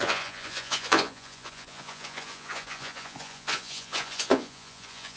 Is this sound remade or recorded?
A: remade